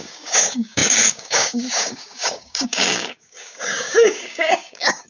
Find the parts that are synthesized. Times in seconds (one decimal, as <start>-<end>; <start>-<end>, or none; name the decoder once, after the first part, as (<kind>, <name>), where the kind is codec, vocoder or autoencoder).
0.0-5.1 (codec, DAC)